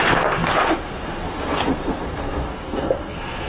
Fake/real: fake